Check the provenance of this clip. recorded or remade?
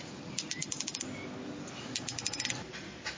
recorded